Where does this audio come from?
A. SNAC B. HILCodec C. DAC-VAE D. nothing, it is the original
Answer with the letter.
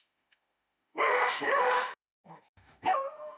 C